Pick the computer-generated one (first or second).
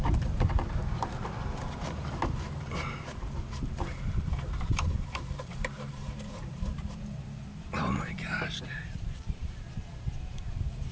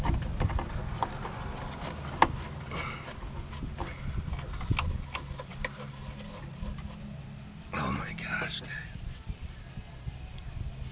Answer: first